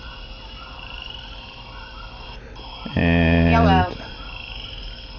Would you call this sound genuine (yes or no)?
yes